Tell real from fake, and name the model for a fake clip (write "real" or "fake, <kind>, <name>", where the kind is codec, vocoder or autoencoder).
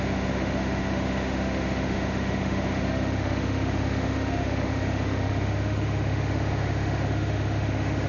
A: fake, autoencoder, DAC-VAE